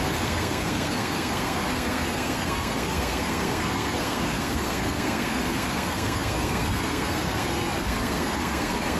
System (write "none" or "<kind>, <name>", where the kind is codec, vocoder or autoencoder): codec, SNAC